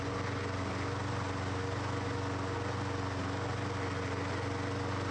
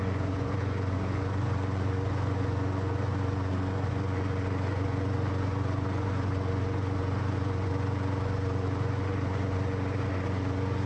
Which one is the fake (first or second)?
second